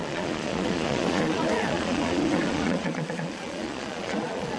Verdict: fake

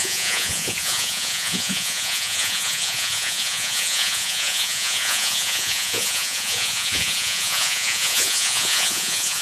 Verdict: fake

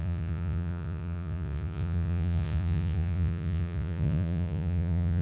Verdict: fake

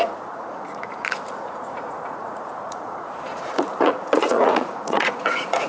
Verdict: fake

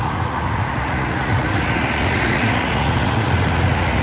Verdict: fake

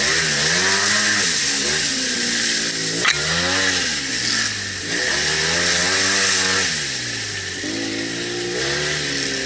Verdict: real